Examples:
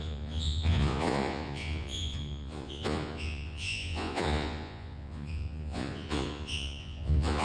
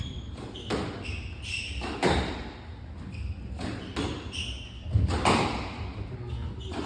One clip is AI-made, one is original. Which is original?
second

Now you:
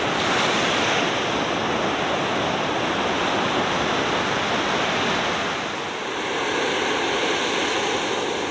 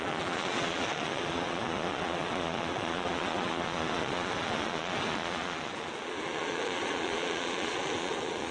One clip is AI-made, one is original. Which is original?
first